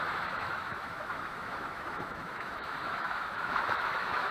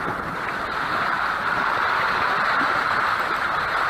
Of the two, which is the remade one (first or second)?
first